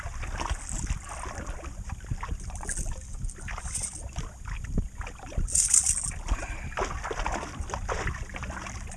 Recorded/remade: recorded